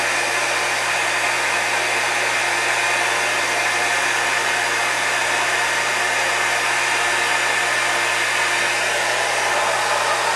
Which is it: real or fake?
real